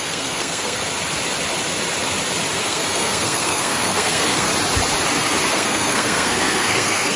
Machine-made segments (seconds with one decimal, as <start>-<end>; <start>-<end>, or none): 0.0-0.8; 2.6-4.5; 5.5-7.2